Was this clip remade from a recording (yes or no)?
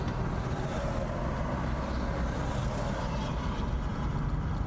no